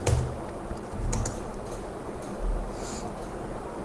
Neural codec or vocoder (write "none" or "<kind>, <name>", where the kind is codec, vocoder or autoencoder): none